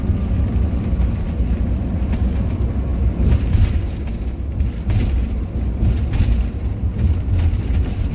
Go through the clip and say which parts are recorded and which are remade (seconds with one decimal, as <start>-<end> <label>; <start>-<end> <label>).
0.0-8.1 recorded